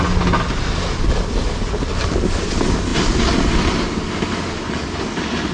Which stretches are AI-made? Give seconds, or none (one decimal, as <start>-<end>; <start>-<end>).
none